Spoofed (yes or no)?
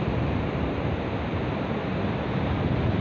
no